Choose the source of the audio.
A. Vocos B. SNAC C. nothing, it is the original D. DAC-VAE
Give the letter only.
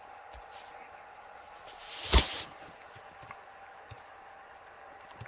C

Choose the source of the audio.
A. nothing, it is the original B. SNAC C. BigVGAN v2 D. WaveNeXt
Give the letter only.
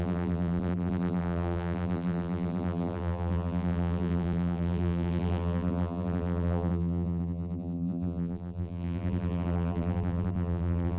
C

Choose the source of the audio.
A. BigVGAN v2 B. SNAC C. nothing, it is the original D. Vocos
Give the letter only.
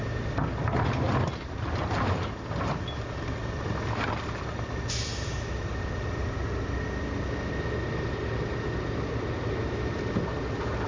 C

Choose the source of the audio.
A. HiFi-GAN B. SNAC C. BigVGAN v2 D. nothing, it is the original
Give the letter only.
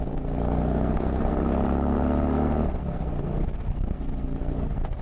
B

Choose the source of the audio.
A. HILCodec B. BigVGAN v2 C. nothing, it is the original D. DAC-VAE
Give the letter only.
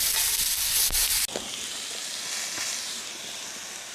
C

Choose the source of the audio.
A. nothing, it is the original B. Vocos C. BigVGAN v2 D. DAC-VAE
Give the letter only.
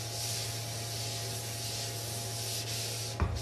A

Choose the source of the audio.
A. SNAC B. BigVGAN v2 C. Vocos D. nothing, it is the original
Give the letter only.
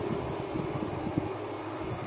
D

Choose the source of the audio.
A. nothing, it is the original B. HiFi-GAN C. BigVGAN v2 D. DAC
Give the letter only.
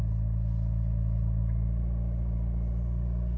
A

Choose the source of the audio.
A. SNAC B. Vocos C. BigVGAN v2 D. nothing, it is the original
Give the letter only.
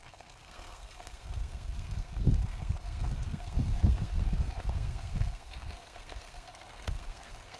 A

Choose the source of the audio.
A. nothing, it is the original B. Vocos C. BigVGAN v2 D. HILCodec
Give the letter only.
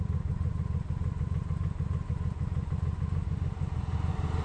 A